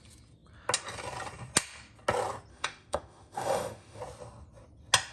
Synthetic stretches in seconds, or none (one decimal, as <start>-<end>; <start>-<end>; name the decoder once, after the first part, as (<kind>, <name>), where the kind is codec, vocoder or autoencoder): 2.5-4.0 (autoencoder, DAC-VAE)